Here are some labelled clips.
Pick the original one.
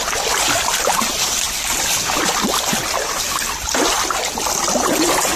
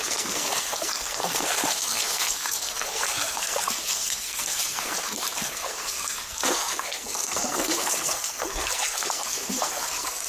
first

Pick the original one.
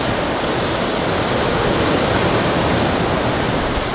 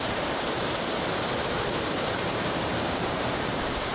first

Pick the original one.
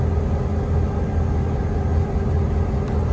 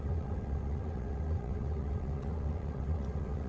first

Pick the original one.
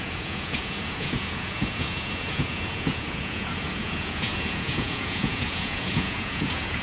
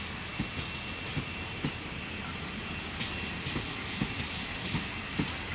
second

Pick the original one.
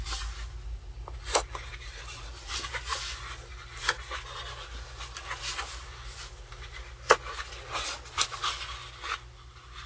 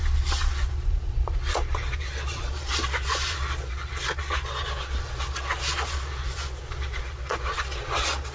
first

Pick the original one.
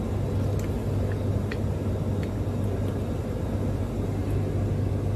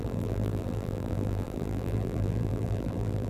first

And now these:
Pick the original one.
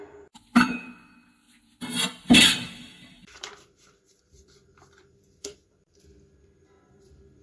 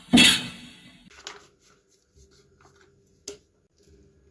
second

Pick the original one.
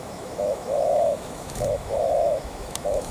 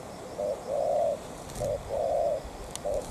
second